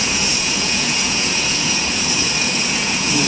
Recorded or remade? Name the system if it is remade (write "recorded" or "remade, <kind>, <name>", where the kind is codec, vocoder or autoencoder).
remade, vocoder, Vocos